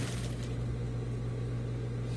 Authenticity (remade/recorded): recorded